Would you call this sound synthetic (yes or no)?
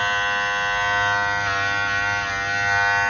no